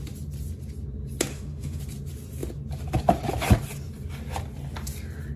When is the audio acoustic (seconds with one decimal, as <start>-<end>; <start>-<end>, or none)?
0.0-1.3; 1.8-5.4